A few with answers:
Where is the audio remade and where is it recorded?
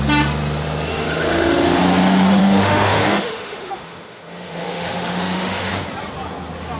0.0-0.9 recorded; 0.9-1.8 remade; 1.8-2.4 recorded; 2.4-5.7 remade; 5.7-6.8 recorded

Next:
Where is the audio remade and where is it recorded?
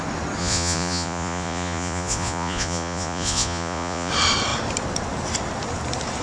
0.0-0.4 recorded; 0.4-4.1 remade; 4.1-6.2 recorded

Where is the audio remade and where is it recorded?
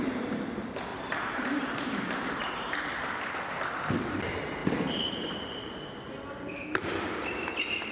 0.0-0.9 recorded; 0.9-3.4 remade; 3.4-4.6 recorded; 4.6-5.7 remade; 5.7-7.9 recorded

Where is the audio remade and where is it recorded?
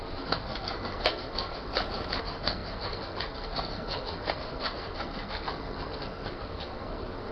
0.0-1.7 remade; 1.7-2.2 recorded; 2.2-7.3 remade